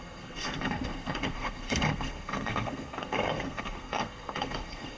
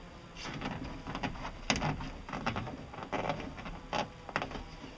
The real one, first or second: second